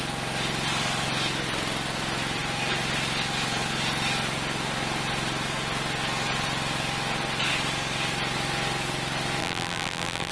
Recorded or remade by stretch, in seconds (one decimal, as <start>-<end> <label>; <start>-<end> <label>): 0.0-9.4 recorded; 9.4-10.3 remade